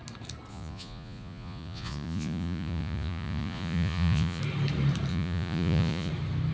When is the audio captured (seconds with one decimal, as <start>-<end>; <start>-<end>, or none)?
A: 0.0-0.5; 4.4-5.1; 6.1-6.5